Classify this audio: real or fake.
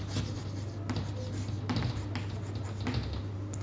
real